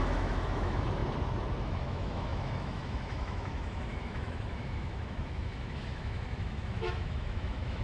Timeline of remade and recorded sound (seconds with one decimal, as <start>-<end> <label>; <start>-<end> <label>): 0.0-1.0 remade; 1.0-1.6 recorded; 1.6-7.8 remade